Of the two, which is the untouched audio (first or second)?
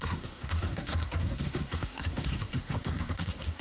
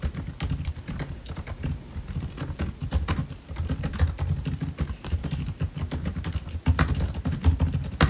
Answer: second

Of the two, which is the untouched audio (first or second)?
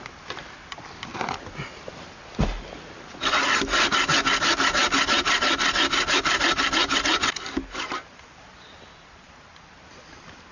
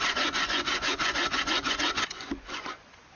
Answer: first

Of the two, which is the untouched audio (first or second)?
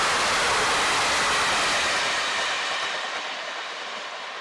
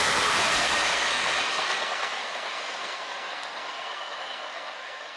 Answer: first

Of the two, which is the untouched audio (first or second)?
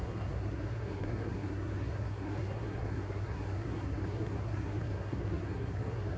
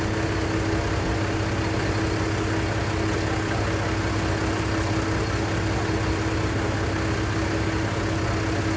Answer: second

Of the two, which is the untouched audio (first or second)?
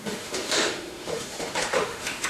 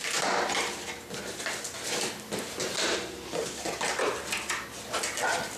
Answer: second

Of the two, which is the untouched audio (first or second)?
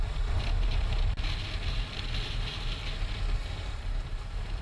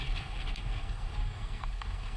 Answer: first